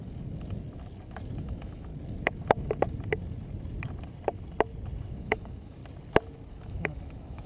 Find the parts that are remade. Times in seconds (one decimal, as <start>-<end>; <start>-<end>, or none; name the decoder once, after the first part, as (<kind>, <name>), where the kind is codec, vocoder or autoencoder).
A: 1.4-1.9 (autoencoder, DAC-VAE); 5.1-5.8; 6.5-7.5

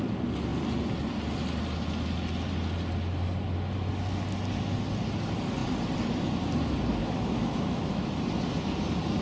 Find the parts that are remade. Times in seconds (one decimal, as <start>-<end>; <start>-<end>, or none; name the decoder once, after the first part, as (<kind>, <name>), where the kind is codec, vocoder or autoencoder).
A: 7.0-8.2 (autoencoder, DAC-VAE)

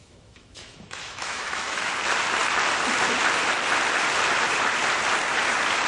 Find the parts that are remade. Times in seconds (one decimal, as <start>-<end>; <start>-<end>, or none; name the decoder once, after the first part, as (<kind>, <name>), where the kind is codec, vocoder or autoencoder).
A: 0.0-1.9 (autoencoder, DAC-VAE)

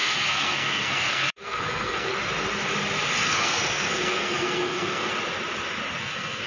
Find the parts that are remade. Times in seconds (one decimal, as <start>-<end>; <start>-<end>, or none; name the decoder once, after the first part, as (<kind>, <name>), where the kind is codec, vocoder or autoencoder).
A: 0.0-2.1 (codec, SNAC); 3.2-5.1; 6.0-6.5

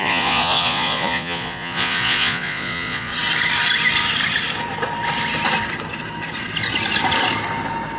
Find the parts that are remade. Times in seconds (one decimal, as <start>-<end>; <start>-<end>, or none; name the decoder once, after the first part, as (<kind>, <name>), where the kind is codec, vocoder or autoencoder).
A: 0.0-3.1 (vocoder, Vocos)

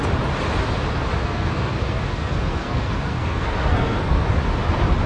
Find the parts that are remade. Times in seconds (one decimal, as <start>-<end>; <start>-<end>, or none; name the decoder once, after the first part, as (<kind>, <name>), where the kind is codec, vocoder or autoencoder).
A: 1.2-4.3 (codec, SNAC)

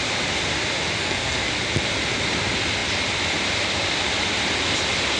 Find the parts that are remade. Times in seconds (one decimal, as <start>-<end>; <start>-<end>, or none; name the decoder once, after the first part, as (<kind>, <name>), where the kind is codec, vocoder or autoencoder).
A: 1.0-1.5 (codec, SNAC)